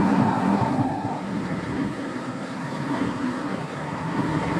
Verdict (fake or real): fake